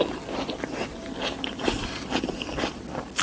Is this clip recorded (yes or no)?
yes